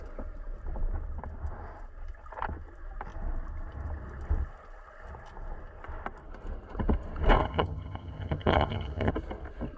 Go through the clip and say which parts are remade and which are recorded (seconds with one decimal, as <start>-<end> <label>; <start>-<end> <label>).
0.0-7.4 recorded; 7.4-9.1 remade; 9.1-9.8 recorded